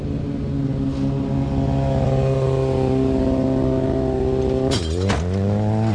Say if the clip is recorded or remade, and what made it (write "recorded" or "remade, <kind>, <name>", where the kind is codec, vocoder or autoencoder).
recorded